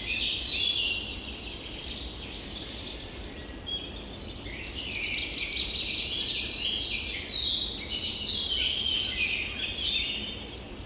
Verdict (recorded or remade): recorded